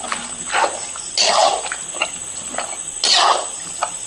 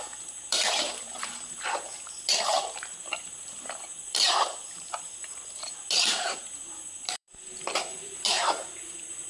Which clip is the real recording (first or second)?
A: first